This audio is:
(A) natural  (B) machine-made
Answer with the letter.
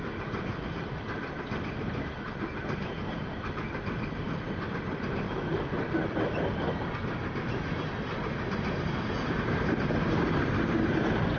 A